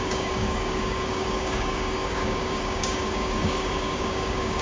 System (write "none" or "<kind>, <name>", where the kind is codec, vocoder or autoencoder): codec, DAC